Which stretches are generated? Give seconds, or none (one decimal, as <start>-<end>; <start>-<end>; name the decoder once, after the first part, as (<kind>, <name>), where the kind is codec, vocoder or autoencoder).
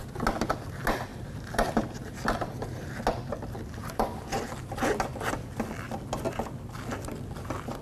1.1-3.0 (vocoder, BigVGAN v2); 3.8-4.8